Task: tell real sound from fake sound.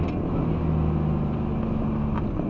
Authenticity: real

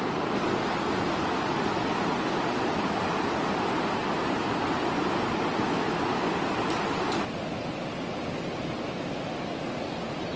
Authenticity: real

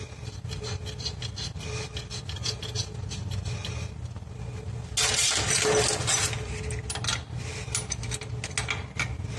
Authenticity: real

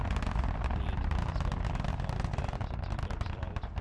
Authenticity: real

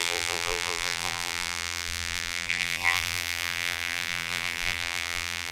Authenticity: fake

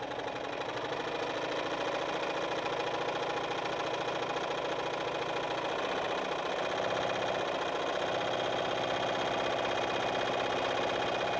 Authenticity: real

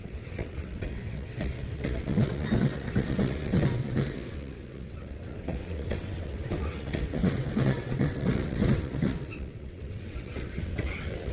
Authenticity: fake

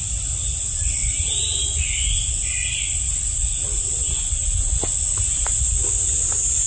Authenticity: real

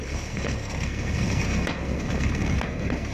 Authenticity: fake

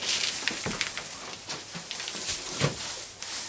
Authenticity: real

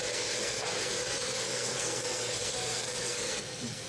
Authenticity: fake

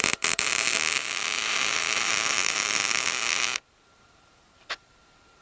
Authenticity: fake